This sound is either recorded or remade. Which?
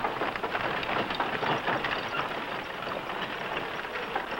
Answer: recorded